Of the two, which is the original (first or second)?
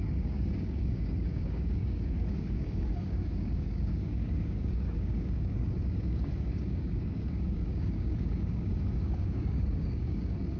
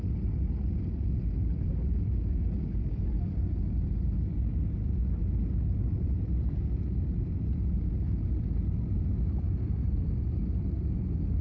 second